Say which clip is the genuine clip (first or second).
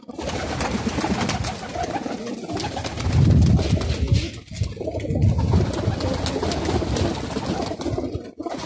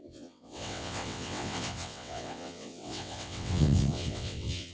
first